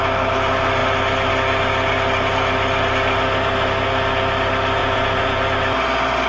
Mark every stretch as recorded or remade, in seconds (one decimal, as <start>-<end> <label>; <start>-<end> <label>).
0.0-4.8 recorded; 4.8-5.4 remade; 5.4-6.3 recorded